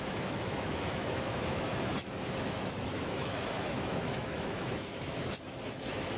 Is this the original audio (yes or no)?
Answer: no